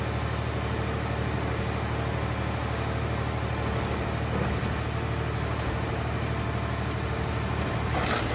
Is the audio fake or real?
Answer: real